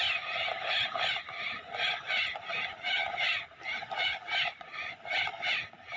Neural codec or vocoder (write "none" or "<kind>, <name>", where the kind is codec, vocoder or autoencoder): none